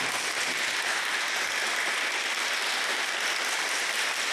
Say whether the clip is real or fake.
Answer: real